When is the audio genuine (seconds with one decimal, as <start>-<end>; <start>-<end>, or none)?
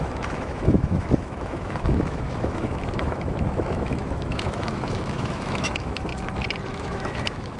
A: 6.1-6.7